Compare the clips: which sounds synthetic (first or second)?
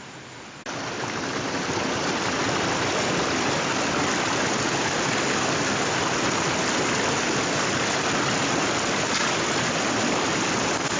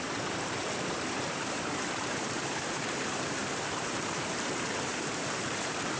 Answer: second